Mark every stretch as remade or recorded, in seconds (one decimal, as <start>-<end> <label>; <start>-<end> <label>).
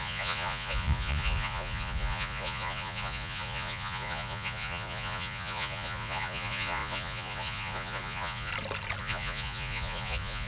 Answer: 0.0-8.5 remade; 8.5-9.0 recorded; 9.0-10.5 remade